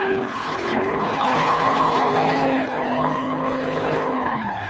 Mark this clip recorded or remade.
remade